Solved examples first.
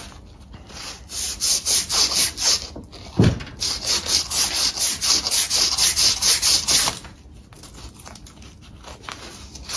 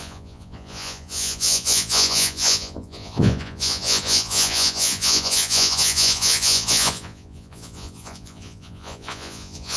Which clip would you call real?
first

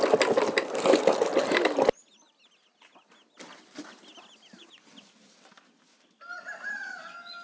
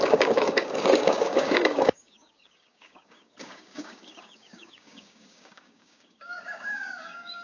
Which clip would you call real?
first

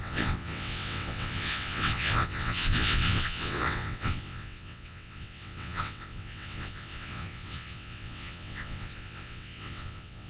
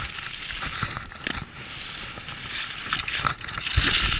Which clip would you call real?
second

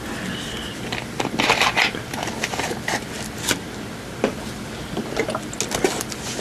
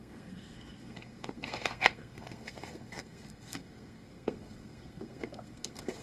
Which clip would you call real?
first